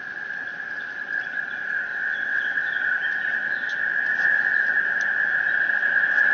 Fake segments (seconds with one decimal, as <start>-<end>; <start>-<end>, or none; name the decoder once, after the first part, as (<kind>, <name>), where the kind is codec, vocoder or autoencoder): 1.9-2.7 (vocoder, WaveNeXt)